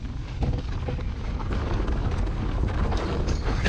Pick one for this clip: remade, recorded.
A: remade